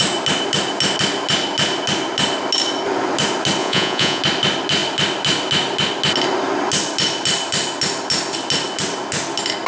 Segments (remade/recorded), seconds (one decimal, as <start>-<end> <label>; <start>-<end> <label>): 0.0-3.6 recorded; 3.6-4.2 remade; 4.2-9.7 recorded